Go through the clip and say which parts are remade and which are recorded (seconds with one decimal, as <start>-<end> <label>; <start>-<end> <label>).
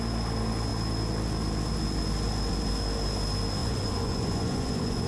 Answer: 0.0-3.6 recorded; 3.6-5.1 remade